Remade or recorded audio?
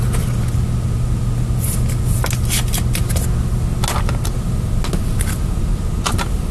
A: recorded